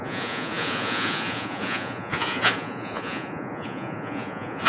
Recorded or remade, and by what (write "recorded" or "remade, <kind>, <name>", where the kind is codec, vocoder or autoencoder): remade, vocoder, Vocos